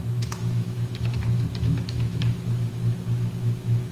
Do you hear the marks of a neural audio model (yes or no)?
yes